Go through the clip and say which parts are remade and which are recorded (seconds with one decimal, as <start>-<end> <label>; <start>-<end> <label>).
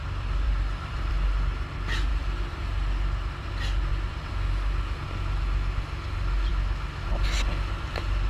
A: 0.0-1.1 remade; 1.1-2.1 recorded; 2.1-2.6 remade; 2.6-3.9 recorded; 3.9-4.5 remade; 4.5-8.3 recorded